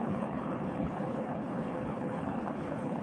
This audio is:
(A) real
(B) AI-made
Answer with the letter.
B